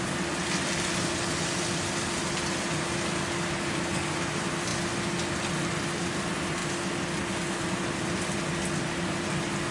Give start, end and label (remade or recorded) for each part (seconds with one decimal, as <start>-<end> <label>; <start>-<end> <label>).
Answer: 0.0-9.7 recorded